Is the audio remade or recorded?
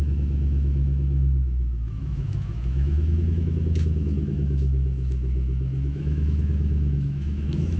remade